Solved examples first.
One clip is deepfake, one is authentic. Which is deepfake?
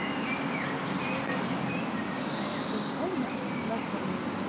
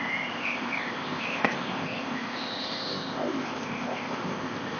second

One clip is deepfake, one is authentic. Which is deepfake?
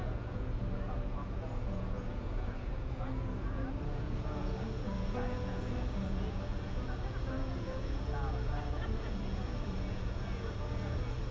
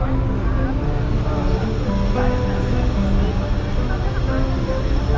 first